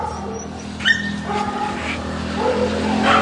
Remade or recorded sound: recorded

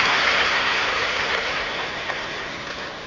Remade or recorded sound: remade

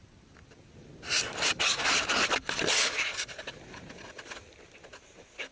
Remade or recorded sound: recorded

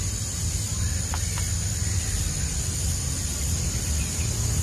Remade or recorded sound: recorded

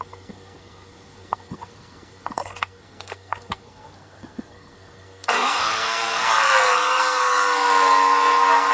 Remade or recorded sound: remade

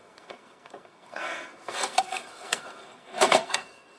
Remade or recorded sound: remade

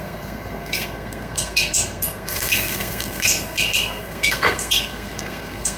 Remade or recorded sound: remade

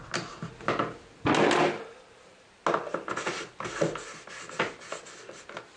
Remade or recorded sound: recorded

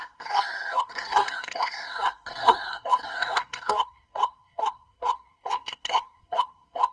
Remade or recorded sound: remade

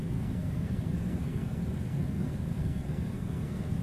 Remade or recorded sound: remade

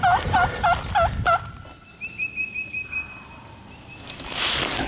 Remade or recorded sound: recorded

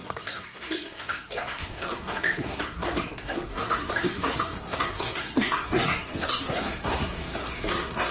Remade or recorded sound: remade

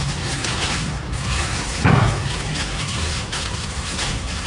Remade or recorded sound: remade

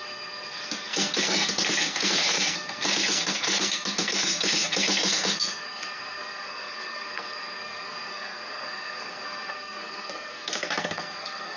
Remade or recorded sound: remade